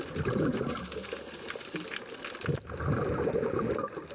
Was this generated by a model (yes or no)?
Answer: no